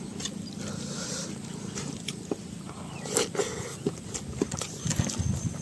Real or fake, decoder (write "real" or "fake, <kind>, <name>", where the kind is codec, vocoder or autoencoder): real